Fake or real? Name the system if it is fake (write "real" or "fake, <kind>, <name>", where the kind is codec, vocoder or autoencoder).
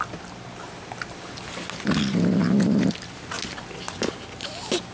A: real